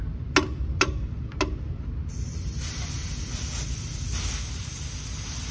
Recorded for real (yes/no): yes